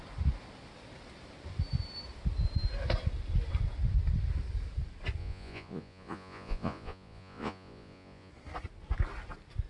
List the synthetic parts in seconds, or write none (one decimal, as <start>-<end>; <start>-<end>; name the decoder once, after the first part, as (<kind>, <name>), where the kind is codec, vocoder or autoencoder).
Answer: 5.2-8.3 (vocoder, Vocos)